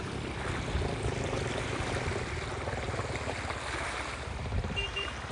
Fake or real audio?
real